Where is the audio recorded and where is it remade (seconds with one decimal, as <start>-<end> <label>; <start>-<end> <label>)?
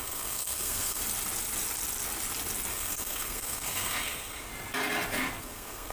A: 0.0-1.0 remade; 1.0-2.7 recorded; 2.7-4.5 remade; 4.5-5.4 recorded; 5.4-5.9 remade